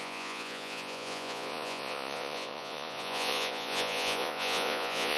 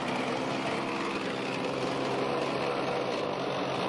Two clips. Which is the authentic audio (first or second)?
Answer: second